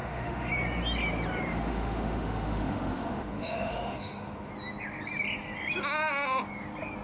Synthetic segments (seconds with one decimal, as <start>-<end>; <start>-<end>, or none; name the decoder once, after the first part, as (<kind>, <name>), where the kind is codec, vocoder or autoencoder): 0.0-0.5 (autoencoder, DAC-VAE); 1.5-4.5